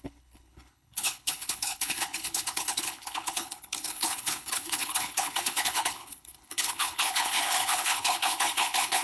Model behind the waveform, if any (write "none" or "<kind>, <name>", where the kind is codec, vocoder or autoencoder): codec, HILCodec